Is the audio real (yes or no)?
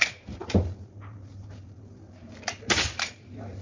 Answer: no